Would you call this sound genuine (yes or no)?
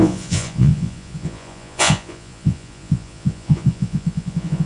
no